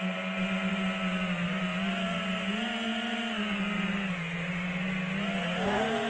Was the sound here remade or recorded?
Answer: recorded